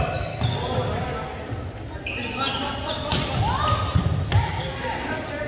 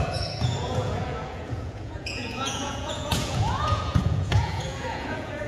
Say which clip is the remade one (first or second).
second